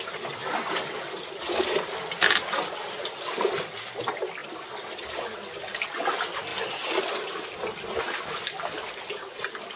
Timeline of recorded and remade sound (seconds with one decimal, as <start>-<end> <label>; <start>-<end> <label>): 0.0-9.8 recorded